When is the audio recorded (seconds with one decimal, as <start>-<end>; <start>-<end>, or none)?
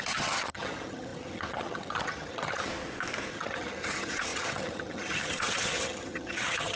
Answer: 2.7-3.3